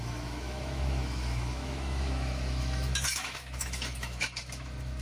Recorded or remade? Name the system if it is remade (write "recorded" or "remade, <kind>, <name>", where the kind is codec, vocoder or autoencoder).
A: remade, autoencoder, DAC-VAE